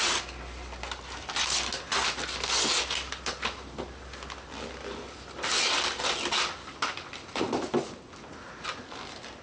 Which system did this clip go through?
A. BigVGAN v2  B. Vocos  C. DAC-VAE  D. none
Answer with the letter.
D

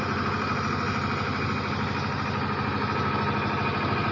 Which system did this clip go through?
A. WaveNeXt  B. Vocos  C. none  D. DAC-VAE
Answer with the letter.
C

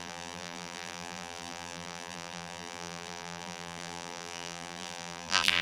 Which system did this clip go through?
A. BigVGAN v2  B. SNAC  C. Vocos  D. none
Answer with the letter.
A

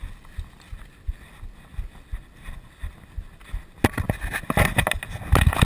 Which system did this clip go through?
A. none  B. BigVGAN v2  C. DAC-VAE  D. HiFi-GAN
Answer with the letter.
A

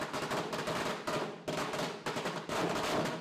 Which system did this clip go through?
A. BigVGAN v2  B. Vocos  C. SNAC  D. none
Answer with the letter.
D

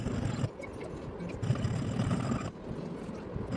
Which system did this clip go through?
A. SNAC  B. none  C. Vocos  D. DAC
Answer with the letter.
B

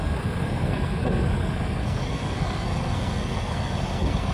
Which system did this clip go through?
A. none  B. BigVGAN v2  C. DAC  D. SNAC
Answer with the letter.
D